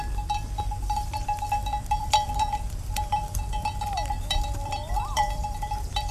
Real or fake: fake